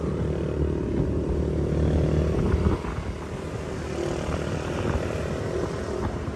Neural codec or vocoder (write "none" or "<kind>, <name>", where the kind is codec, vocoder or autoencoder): none